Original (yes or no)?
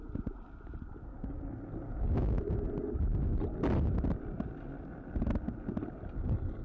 yes